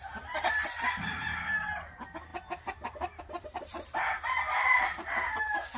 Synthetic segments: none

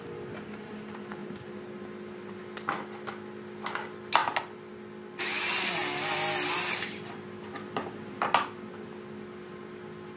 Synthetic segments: none

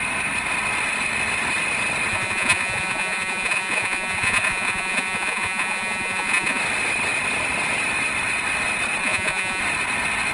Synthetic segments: 2.1-6.6 (vocoder, Vocos); 9.0-9.6